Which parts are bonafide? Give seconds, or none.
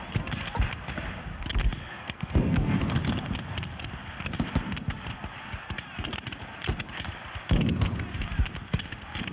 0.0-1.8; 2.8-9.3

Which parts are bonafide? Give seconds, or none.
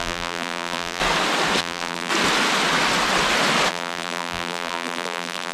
1.0-1.6; 2.1-3.7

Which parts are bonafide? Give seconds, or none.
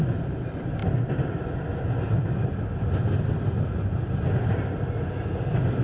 0.0-5.8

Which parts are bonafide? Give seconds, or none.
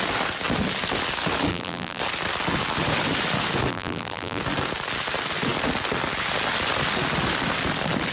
0.0-1.5; 2.0-3.7; 4.4-8.1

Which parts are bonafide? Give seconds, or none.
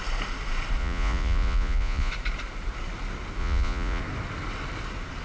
0.0-0.8; 2.1-3.4; 4.0-5.2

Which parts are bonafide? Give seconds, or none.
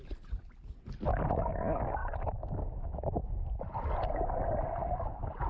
0.0-5.5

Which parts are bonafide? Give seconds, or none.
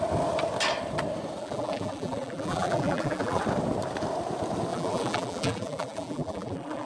0.0-1.4; 3.4-4.7